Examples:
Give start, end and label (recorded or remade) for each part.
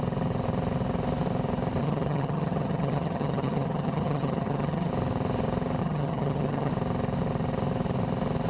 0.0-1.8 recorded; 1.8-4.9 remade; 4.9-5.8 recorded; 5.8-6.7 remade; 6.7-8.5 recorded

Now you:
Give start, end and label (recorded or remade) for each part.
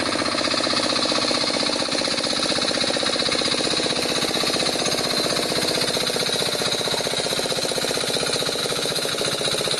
0.0-8.6 recorded; 8.6-9.1 remade; 9.1-9.8 recorded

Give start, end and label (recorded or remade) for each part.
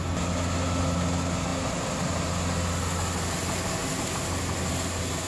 0.0-5.3 recorded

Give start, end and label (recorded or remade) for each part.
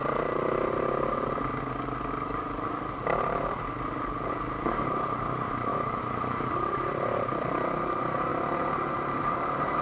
0.0-5.7 recorded; 5.7-6.5 remade; 6.5-9.8 recorded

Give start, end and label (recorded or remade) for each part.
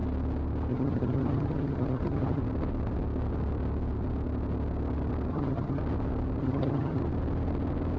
0.0-0.7 recorded; 0.7-2.4 remade; 2.4-5.3 recorded; 5.3-5.8 remade; 5.8-6.4 recorded; 6.4-7.0 remade; 7.0-8.0 recorded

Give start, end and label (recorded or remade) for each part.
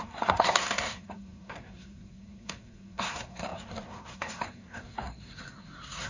0.0-6.1 remade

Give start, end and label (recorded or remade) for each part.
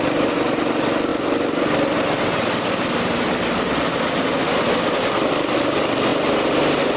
0.0-7.0 recorded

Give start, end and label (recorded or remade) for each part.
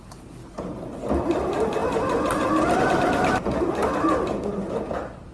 0.0-5.3 recorded